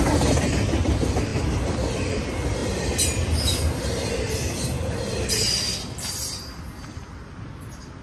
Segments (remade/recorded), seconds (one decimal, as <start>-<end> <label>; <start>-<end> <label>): 0.0-8.0 recorded